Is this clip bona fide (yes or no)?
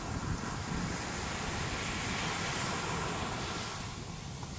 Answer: yes